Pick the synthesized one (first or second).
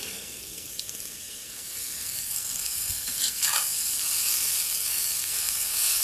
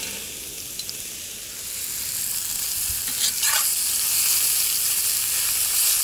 first